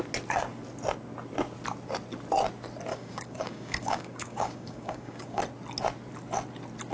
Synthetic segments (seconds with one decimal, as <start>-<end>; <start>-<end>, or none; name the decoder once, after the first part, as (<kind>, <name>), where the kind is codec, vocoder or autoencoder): 2.9-5.4 (codec, DAC)